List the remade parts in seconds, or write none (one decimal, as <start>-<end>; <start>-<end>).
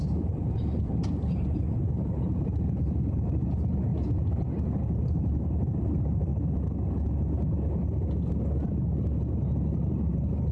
0.0-6.3; 9.9-10.5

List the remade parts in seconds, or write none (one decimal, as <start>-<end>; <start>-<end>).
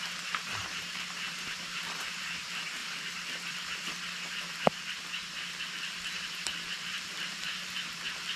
0.0-2.8; 6.1-8.4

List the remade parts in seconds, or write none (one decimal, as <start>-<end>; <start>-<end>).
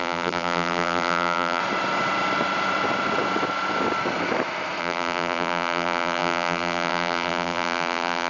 0.0-1.6; 4.8-8.3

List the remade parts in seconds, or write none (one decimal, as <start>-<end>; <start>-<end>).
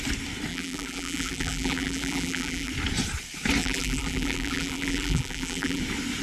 0.5-2.7; 3.6-5.8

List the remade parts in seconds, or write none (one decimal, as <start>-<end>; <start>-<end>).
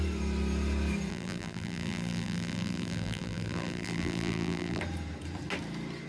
1.1-4.8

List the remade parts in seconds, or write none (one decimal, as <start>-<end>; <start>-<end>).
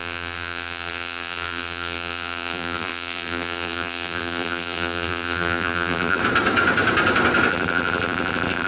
0.0-6.2; 7.5-8.7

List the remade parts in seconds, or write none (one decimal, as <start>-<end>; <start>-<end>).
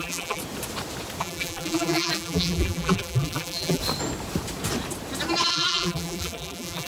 0.0-0.4; 1.2-3.8; 5.5-6.9